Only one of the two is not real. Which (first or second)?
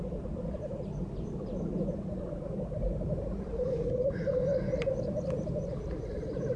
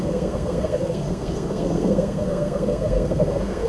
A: second